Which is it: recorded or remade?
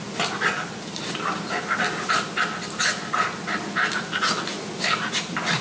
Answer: recorded